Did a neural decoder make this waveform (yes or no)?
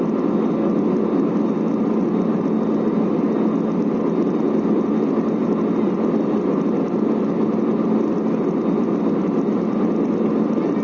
no